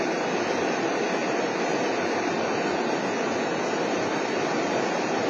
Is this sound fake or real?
real